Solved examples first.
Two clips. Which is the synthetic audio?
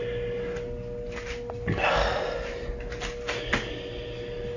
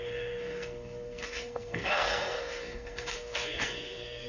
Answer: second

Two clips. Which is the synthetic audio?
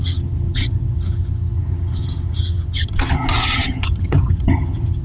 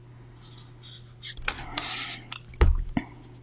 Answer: first